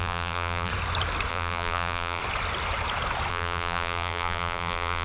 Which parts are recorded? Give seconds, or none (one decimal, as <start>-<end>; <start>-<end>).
0.7-1.3; 2.2-3.3